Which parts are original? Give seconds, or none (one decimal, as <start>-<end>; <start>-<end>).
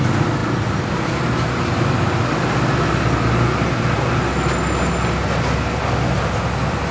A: 0.0-6.9